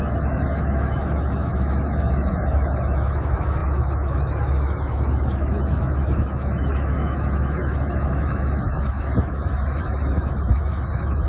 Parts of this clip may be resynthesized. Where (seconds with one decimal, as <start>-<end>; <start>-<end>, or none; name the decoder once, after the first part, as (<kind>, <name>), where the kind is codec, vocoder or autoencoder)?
0.0-11.3 (autoencoder, DAC-VAE)